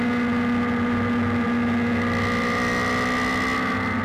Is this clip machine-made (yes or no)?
no